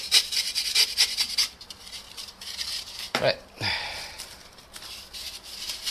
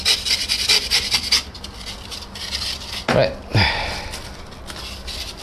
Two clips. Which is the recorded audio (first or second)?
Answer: second